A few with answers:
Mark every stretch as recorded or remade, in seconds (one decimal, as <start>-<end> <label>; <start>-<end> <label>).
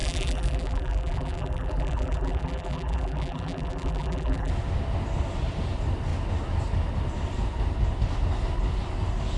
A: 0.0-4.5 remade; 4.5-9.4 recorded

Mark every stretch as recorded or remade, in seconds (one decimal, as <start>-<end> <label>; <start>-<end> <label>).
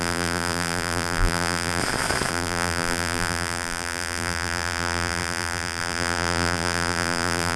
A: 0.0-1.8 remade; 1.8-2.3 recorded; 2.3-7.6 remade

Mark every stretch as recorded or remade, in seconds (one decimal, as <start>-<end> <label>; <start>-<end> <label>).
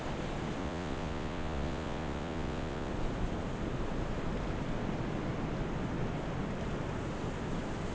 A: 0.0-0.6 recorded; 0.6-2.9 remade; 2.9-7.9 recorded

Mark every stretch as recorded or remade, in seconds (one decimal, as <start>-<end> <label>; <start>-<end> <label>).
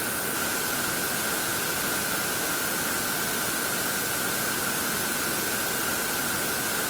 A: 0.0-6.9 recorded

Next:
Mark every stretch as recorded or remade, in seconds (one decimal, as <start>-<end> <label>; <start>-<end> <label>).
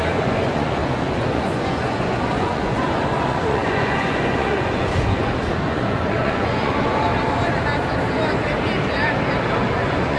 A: 0.0-7.1 remade; 7.1-9.6 recorded; 9.6-10.2 remade